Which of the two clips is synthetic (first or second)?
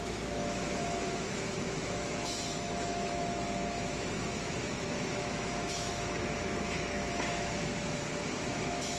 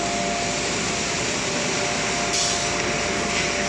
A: first